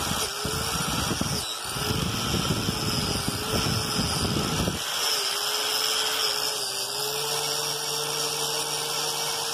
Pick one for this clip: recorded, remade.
recorded